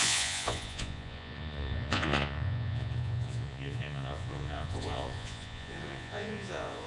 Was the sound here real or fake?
fake